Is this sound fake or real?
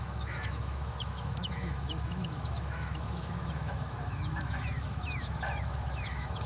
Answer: fake